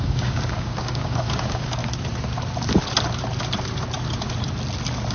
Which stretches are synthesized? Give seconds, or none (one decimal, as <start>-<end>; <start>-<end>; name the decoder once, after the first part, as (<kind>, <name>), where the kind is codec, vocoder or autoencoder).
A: 0.0-1.8 (codec, DAC)